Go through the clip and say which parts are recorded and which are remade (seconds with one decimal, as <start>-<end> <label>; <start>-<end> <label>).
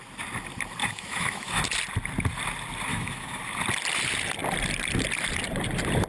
0.0-0.8 recorded; 0.8-1.6 remade; 1.6-2.9 recorded; 2.9-3.4 remade; 3.4-6.1 recorded